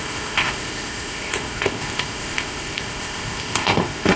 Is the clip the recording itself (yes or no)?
no